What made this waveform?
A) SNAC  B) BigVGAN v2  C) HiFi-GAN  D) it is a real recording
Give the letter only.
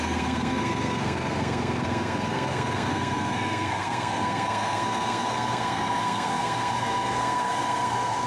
A